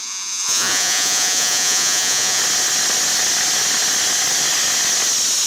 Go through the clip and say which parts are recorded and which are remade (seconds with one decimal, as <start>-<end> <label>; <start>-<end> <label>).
0.0-2.4 remade; 2.4-5.5 recorded